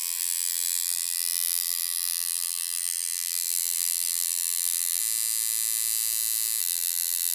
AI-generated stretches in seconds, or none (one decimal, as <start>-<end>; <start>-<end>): 0.0-5.0; 6.6-7.3